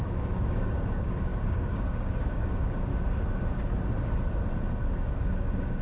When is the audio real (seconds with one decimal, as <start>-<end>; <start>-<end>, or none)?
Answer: 2.9-4.9